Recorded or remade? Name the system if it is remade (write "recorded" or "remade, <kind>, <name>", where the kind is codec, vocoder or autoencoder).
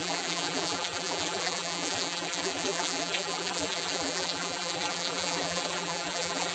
remade, vocoder, BigVGAN v2